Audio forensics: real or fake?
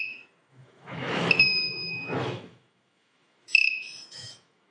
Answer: fake